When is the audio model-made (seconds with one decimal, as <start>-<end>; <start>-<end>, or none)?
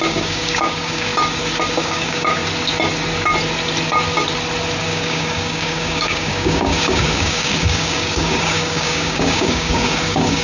0.0-1.1; 1.7-2.4; 4.8-10.4